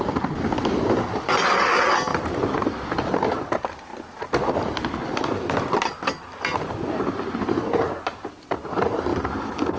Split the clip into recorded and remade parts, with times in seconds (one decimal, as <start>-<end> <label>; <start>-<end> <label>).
0.0-2.1 recorded; 2.1-2.6 remade; 2.6-9.8 recorded